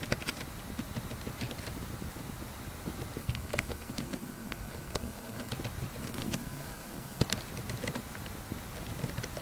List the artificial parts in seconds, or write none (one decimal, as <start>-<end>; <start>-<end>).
3.2-5.5; 6.0-7.2